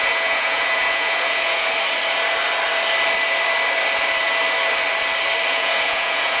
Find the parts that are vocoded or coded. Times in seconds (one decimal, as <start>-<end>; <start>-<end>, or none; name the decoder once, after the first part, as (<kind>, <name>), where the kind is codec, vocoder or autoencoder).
0.0-1.7 (vocoder, Vocos); 5.5-6.4